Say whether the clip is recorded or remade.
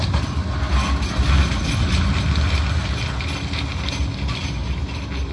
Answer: recorded